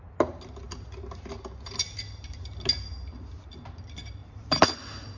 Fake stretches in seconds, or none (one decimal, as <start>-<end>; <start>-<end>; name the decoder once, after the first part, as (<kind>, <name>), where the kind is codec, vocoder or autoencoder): 4.2-4.8 (vocoder, BigVGAN v2)